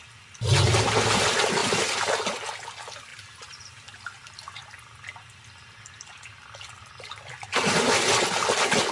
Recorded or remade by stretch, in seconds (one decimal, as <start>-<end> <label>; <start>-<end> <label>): 0.0-1.6 recorded; 1.6-2.1 remade; 2.1-3.1 recorded; 3.1-8.0 remade; 8.0-8.9 recorded